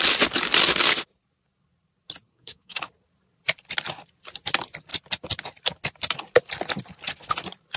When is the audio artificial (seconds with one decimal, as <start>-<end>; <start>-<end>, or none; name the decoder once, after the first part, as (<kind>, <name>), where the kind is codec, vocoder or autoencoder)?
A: 2.3-2.8 (codec, SNAC)